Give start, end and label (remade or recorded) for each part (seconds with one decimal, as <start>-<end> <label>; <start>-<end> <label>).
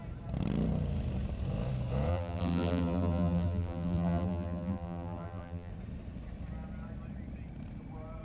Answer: 0.0-2.1 recorded; 2.1-5.7 remade; 5.7-8.2 recorded